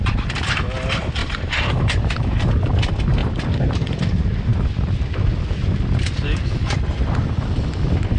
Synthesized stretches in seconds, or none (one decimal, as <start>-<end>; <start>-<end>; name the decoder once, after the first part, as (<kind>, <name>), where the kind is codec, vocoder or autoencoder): 1.2-2.5 (vocoder, BigVGAN v2); 3.2-4.0